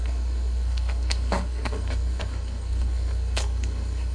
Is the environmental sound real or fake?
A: fake